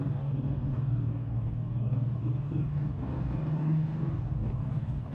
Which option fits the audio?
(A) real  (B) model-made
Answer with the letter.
B